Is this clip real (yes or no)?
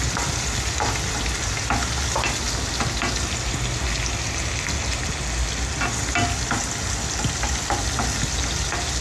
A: yes